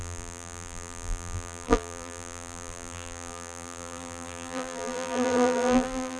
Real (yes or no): no